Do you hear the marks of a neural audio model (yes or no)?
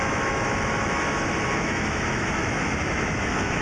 yes